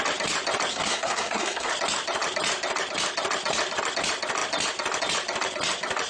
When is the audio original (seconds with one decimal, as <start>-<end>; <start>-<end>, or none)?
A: 0.0-0.7; 1.7-6.1